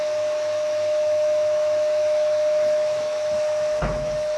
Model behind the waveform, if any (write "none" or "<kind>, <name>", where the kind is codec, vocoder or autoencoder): autoencoder, DAC-VAE